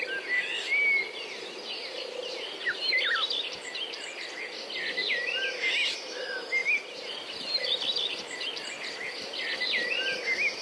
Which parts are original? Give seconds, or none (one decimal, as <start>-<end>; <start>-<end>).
0.0-6.6; 8.5-10.6